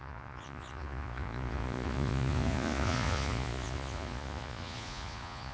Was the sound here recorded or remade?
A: remade